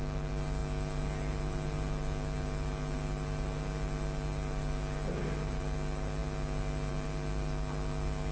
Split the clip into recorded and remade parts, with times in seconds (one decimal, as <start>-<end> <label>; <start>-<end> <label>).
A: 0.0-8.3 recorded